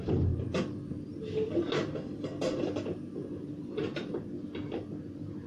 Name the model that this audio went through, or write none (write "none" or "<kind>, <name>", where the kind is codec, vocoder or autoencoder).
none